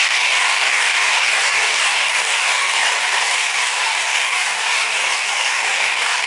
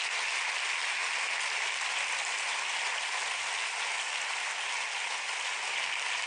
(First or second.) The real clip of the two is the second